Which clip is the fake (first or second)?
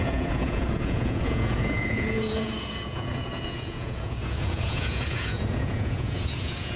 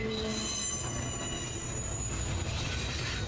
first